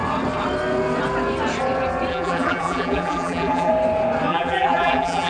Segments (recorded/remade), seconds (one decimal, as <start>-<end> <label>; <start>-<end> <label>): 0.0-2.1 recorded; 2.1-3.7 remade; 3.7-4.3 recorded; 4.3-5.3 remade